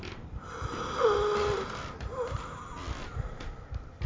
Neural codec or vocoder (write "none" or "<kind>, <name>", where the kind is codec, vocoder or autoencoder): none